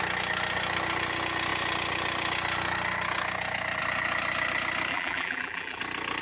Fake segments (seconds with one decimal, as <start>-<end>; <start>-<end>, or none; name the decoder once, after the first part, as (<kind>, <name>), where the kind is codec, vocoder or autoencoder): 4.9-5.8 (vocoder, BigVGAN v2)